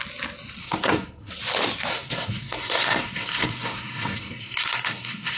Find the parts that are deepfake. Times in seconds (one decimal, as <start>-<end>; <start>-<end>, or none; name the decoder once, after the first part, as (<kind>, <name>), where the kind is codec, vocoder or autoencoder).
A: 0.6-1.3 (codec, SNAC); 1.9-5.4